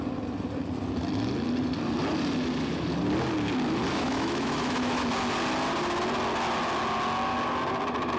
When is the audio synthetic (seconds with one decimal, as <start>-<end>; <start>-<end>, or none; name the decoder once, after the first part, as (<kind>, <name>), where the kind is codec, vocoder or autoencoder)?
3.9-5.0 (autoencoder, DAC-VAE)